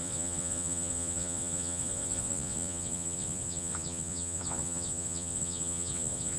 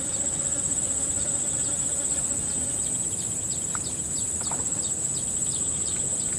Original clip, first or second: second